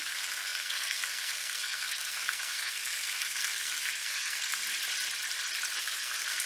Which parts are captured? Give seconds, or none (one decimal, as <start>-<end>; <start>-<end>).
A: 4.6-5.8